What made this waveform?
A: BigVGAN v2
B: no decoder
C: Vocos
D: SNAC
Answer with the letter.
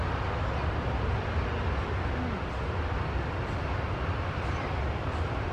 B